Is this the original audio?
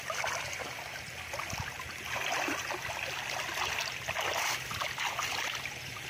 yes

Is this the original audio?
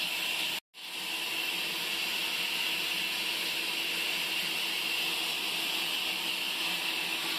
yes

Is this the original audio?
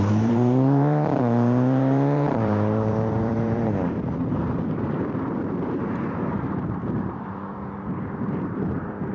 no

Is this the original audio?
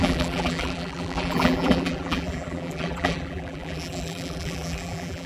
no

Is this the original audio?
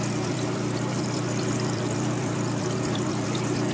no